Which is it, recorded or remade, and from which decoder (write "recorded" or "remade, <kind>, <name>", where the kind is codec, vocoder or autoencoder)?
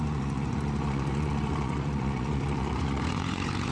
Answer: remade, vocoder, Vocos